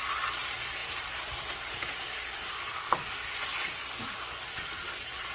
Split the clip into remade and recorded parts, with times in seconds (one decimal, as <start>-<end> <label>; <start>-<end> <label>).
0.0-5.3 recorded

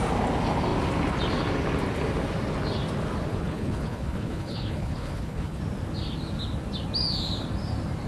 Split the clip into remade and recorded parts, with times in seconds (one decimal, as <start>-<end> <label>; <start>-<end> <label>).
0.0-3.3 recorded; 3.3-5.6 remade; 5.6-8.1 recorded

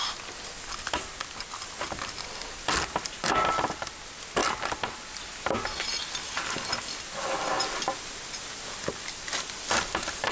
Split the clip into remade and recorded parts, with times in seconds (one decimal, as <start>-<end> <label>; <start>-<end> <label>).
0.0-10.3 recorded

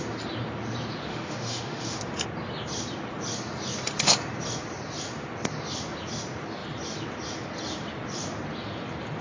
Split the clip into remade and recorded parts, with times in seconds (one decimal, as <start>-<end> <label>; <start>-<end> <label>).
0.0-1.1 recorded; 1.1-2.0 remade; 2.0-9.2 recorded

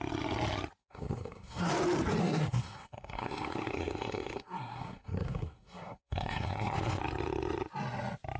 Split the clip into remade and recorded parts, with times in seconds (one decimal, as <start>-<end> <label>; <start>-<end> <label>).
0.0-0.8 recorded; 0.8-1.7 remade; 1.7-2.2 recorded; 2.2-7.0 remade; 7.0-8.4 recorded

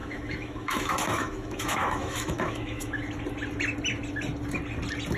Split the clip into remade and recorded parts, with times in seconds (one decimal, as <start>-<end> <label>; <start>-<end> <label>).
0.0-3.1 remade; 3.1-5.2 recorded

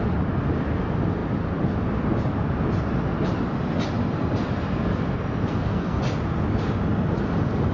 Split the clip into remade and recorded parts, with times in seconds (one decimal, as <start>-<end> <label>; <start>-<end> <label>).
0.0-5.5 recorded; 5.5-6.0 remade; 6.0-7.7 recorded